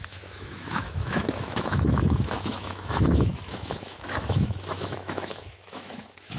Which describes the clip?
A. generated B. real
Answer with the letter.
A